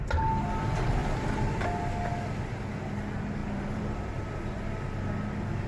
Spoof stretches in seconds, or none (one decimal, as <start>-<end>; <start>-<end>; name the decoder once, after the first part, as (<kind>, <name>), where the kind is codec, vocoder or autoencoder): 3.4-4.2 (vocoder, BigVGAN v2)